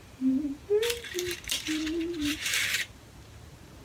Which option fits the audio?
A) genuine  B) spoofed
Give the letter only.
B